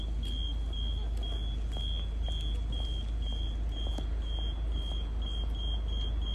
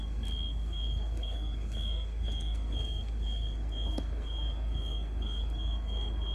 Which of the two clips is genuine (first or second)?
first